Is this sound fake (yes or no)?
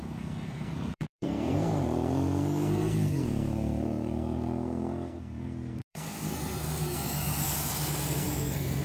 yes